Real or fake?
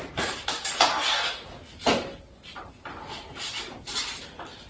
real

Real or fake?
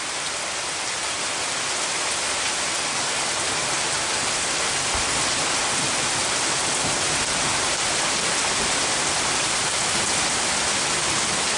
real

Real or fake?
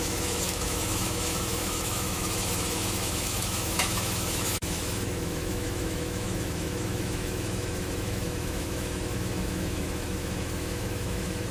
fake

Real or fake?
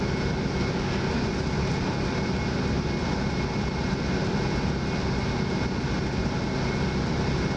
real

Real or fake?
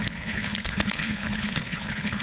fake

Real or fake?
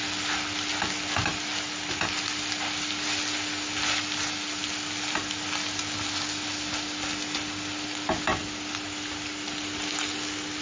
real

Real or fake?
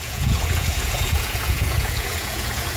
fake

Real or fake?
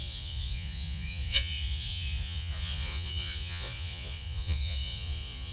fake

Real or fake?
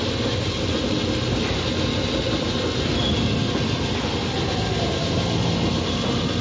real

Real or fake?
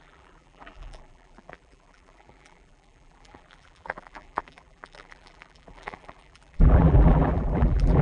fake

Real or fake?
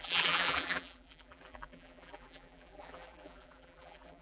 fake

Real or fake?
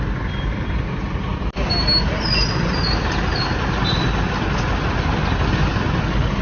real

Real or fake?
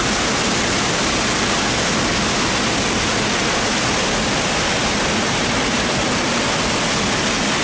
real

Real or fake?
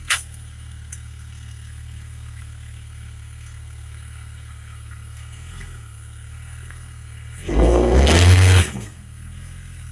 fake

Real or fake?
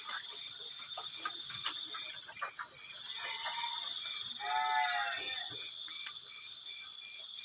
real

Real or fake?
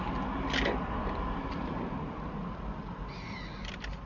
real